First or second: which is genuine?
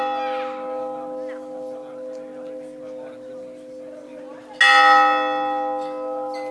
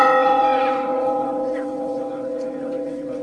first